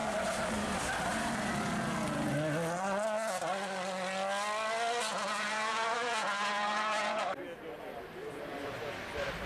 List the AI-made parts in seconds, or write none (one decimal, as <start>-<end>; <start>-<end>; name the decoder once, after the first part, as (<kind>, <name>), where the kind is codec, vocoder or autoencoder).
5.1-7.2 (vocoder, Vocos)